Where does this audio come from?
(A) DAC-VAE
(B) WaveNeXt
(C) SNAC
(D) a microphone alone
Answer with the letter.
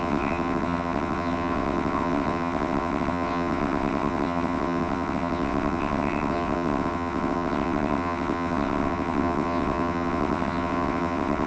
B